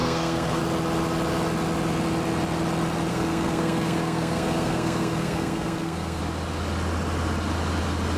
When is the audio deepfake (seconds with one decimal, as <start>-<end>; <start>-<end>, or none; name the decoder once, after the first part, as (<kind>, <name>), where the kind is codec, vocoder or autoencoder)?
0.0-0.6 (codec, SNAC); 3.1-6.2